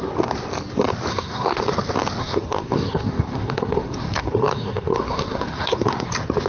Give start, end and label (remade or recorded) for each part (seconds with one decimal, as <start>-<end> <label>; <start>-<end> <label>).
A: 0.0-1.1 recorded; 1.1-1.6 remade; 1.6-2.2 recorded; 2.2-6.1 remade; 6.1-6.5 recorded